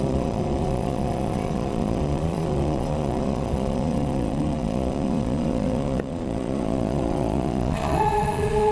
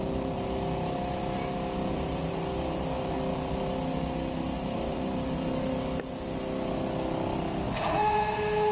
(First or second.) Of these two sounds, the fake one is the first